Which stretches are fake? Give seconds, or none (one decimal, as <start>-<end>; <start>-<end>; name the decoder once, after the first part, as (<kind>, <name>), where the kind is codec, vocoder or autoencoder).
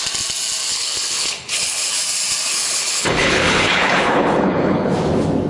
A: 0.7-1.9 (codec, HILCodec); 2.5-4.9